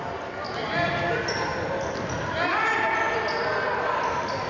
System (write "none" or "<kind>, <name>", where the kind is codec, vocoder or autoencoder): none